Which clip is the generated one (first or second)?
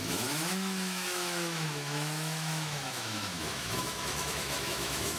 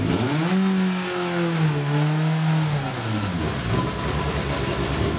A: first